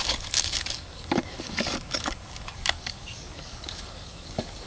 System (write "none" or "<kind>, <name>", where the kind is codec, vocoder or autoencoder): codec, DAC